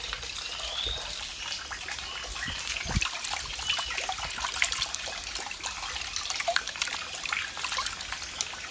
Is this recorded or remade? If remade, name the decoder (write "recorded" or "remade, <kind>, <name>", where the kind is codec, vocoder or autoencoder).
recorded